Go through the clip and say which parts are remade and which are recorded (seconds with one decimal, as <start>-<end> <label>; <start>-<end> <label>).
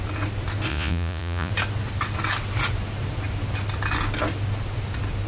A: 0.0-0.7 recorded; 0.7-1.5 remade; 1.5-5.3 recorded